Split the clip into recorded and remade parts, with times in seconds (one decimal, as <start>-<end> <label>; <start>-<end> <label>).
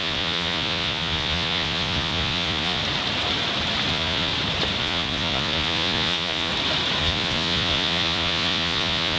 0.0-2.8 remade; 2.8-3.9 recorded; 3.9-4.3 remade; 4.3-4.8 recorded; 4.8-6.5 remade; 6.5-7.0 recorded; 7.0-9.2 remade